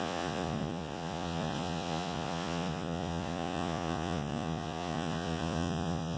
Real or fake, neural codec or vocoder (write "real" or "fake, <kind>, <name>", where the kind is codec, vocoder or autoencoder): fake, vocoder, Vocos